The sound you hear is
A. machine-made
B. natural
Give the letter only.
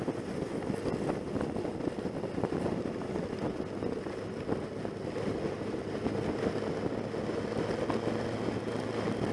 B